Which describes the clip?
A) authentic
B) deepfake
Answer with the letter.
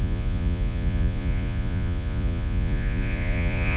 B